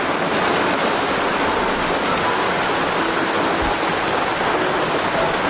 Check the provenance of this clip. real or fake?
real